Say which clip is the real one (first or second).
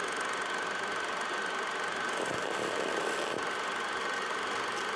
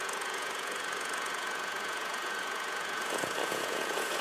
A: first